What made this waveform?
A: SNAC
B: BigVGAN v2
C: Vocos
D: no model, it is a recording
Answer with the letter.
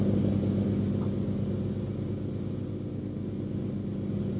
D